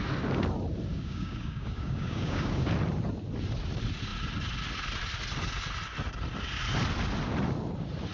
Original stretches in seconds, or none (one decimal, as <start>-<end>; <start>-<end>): 0.0-0.9; 2.7-8.1